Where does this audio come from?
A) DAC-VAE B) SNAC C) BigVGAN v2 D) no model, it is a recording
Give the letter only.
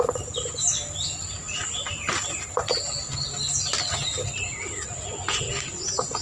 D